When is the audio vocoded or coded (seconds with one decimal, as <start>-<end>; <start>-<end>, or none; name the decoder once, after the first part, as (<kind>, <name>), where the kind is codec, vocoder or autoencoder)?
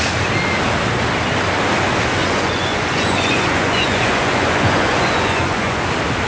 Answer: 2.2-5.8 (vocoder, Vocos)